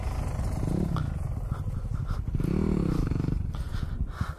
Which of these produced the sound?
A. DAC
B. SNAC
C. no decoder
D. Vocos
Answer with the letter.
C